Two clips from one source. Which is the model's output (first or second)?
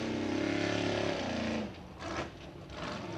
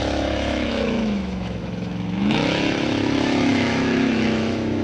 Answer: second